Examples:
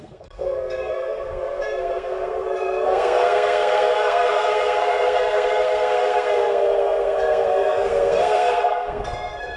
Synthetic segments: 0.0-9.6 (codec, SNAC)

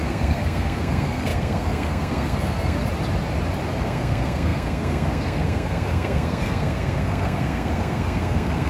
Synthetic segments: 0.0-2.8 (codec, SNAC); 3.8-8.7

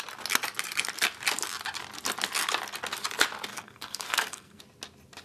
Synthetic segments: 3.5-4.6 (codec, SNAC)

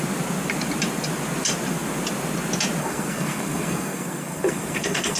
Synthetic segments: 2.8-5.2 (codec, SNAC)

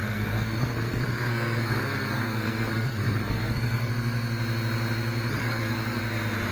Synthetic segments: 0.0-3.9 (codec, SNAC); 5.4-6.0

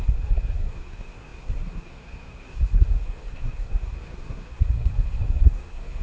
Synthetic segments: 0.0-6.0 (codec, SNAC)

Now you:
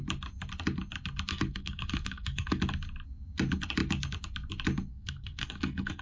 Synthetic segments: 1.3-2.6 (codec, SNAC); 4.9-6.0

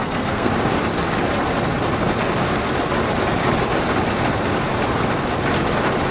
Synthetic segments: 0.0-0.5 (codec, SNAC)